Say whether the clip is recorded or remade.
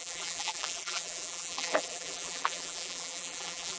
remade